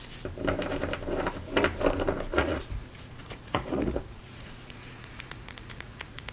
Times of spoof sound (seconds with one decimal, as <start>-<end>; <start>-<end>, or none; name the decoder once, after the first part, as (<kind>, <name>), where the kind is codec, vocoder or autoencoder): 2.3-6.3 (vocoder, Vocos)